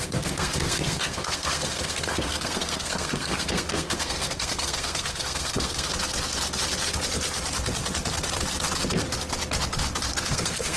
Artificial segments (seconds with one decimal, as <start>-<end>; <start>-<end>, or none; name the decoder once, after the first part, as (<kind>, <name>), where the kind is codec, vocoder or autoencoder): 0.0-5.9 (codec, SNAC); 10.3-10.8